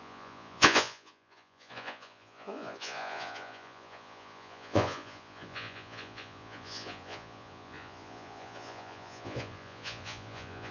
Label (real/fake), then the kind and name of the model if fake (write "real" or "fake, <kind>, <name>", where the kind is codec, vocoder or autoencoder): fake, vocoder, Vocos